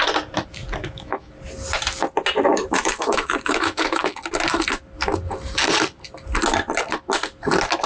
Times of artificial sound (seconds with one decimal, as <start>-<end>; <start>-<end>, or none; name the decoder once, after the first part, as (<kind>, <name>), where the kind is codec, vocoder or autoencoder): 0.8-1.3 (autoencoder, DAC-VAE); 2.5-4.2